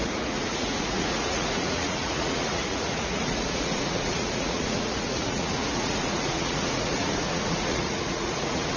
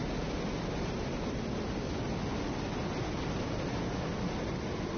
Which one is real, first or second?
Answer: second